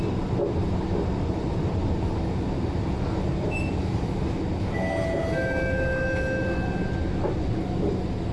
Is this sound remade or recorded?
recorded